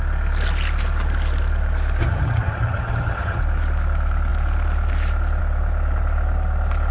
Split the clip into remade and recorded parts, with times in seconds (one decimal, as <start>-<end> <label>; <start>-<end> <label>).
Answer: 0.0-2.0 recorded; 2.0-3.4 remade; 3.4-6.9 recorded